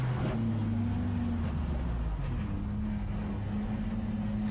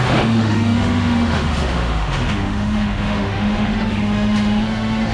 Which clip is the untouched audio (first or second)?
first